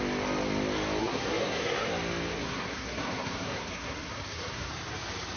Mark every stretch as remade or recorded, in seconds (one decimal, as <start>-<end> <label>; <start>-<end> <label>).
0.0-1.0 recorded; 1.0-1.9 remade; 1.9-2.4 recorded; 2.4-4.7 remade; 4.7-5.4 recorded

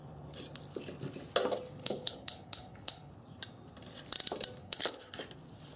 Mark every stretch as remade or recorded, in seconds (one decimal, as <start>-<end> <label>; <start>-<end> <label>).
0.0-1.8 recorded; 1.8-3.1 remade; 3.1-4.6 recorded; 4.6-5.2 remade; 5.2-5.8 recorded

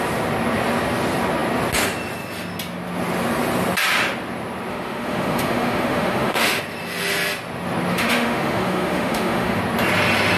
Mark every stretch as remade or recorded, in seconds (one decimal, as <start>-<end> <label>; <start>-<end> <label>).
0.0-4.7 recorded; 4.7-6.6 remade; 6.6-7.9 recorded; 7.9-9.6 remade; 9.6-10.4 recorded

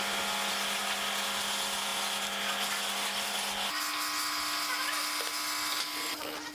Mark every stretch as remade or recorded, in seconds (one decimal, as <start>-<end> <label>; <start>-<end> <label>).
0.0-6.5 recorded

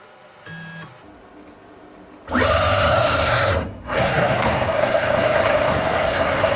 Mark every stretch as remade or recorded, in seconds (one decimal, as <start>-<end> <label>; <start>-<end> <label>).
0.0-2.9 recorded; 2.9-6.6 remade